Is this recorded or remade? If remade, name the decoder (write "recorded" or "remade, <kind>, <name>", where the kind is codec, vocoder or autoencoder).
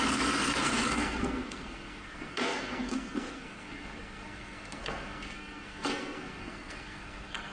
remade, codec, SNAC